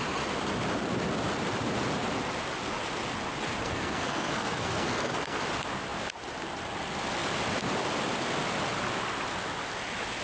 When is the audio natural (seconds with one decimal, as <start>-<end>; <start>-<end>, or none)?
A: 0.0-3.6; 5.4-10.2